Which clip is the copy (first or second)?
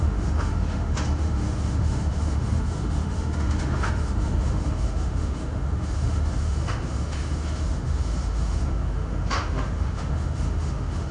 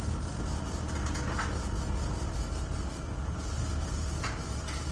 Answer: first